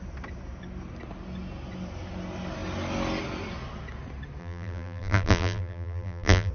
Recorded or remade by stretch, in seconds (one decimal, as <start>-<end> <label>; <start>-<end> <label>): 0.0-4.4 recorded; 4.4-6.5 remade